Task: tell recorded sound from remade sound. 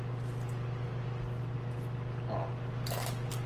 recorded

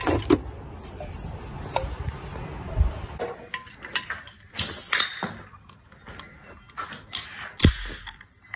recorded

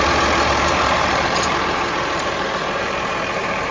remade